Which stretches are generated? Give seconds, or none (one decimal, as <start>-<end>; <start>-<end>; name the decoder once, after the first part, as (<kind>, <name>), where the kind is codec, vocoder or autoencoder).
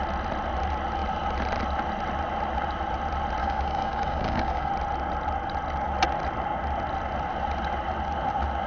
3.4-4.7 (codec, DAC)